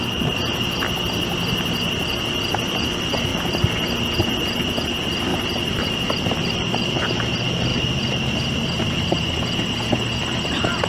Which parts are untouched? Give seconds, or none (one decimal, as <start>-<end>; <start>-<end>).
0.0-5.3; 7.1-7.7; 9.4-10.9

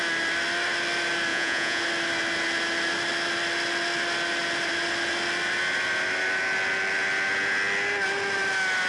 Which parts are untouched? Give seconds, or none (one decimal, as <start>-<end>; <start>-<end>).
0.0-1.3; 1.8-8.9